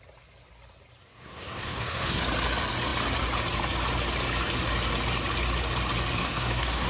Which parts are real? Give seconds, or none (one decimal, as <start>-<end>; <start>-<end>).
0.0-1.0; 2.2-6.2

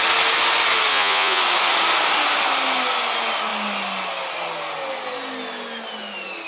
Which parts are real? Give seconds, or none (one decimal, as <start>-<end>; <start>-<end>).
0.0-0.9; 1.4-6.5

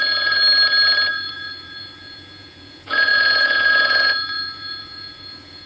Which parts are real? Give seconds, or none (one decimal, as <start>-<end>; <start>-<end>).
0.4-1.1